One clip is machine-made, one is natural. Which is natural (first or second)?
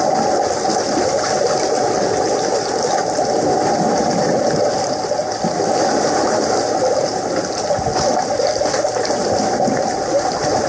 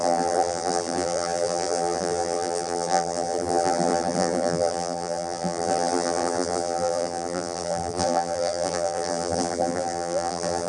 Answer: first